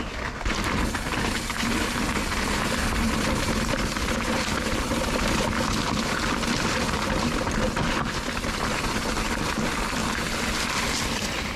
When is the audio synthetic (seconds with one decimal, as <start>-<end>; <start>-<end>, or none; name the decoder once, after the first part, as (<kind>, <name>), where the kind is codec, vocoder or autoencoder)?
none